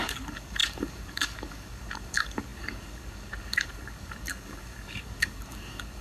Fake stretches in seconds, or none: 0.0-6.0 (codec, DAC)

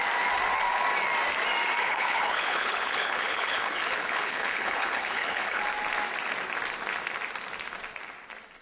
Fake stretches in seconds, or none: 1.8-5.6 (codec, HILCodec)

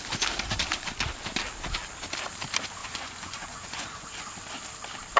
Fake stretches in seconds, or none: 2.8-4.3 (vocoder, Vocos)